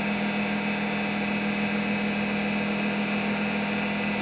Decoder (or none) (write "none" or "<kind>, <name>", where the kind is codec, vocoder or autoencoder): none